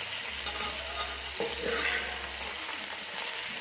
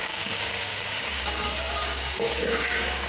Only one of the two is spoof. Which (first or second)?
second